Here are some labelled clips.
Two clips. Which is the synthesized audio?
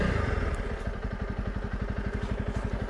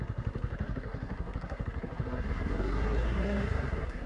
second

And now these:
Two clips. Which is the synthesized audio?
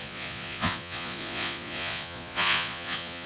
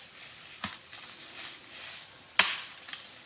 first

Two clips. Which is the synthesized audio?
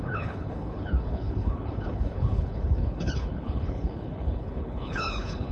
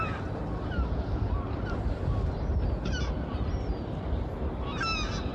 first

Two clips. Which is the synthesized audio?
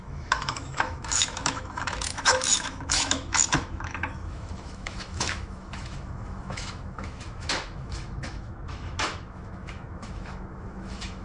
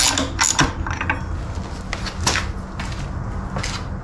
first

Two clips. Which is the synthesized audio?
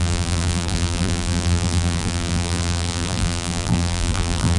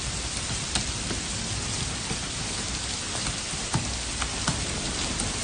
first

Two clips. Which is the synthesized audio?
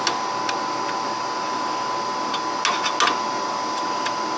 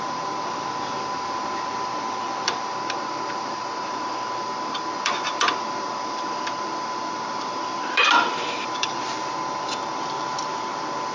second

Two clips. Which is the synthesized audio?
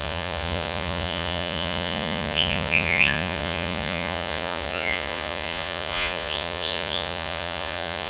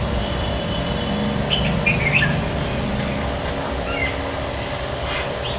first